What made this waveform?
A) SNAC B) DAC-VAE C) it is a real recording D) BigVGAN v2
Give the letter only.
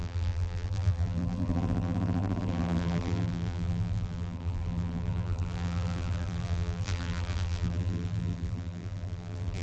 D